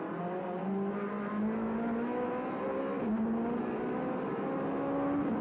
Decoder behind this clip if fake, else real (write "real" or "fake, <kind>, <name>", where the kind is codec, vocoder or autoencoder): real